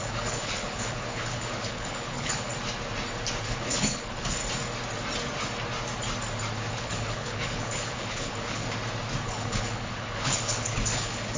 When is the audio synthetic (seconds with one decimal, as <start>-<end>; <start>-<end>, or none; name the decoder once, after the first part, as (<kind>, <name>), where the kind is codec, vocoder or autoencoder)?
0.0-2.5 (codec, HILCodec); 3.4-4.4; 6.7-8.6; 9.2-11.4